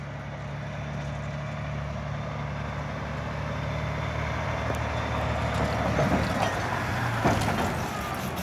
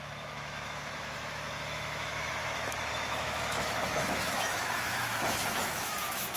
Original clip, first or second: first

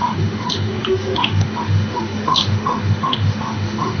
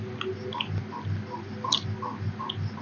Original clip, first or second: second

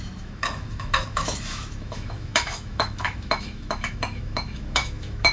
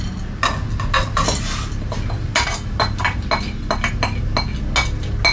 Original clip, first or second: second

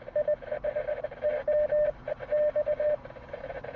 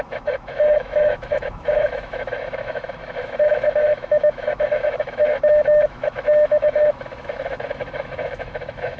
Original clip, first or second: first